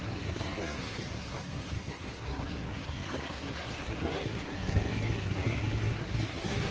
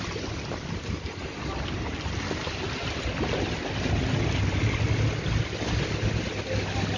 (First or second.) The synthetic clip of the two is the first